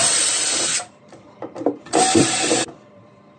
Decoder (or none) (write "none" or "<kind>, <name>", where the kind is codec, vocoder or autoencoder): vocoder, BigVGAN v2